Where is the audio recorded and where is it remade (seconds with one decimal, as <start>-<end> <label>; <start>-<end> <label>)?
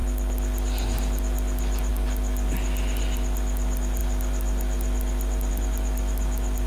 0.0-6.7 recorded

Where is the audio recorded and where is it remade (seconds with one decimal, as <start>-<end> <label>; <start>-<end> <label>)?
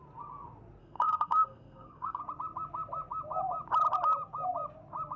0.0-0.8 recorded; 0.8-2.2 remade; 2.2-5.2 recorded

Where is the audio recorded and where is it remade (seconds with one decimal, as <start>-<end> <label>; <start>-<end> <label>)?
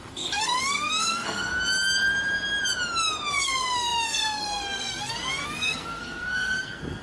0.0-1.5 remade; 1.5-3.3 recorded; 3.3-7.0 remade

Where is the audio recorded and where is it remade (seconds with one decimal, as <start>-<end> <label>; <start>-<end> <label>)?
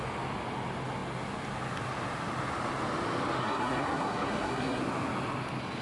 0.0-3.4 recorded; 3.4-4.8 remade; 4.8-5.8 recorded